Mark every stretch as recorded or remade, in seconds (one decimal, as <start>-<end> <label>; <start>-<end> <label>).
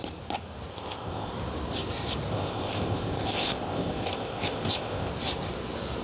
0.0-0.7 recorded; 0.7-1.3 remade; 1.3-2.3 recorded; 2.3-5.1 remade; 5.1-6.0 recorded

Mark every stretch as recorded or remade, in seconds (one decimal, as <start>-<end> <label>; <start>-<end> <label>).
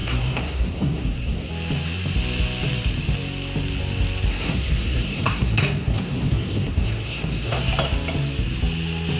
0.0-1.5 remade; 1.5-4.3 recorded; 4.3-7.6 remade; 7.6-9.2 recorded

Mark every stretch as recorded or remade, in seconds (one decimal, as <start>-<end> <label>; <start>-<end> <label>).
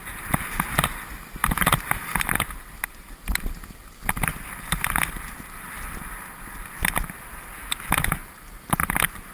0.0-1.4 recorded; 1.4-2.3 remade; 2.3-8.2 recorded; 8.2-8.9 remade; 8.9-9.3 recorded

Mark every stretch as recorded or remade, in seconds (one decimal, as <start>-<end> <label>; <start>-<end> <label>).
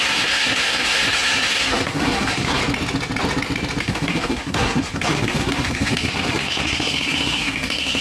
0.0-2.6 remade; 2.6-3.8 recorded; 3.8-8.0 remade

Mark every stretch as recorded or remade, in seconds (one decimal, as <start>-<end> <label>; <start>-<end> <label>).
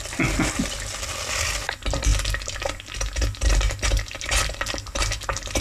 0.0-5.6 recorded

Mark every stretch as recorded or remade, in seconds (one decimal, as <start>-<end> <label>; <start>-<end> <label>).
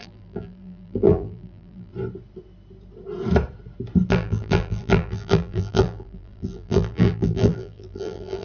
0.0-1.9 remade; 1.9-4.1 recorded; 4.1-8.4 remade